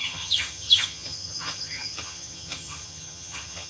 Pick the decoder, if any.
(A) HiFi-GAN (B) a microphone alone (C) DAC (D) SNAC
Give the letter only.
A